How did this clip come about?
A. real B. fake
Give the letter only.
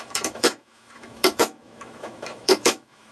B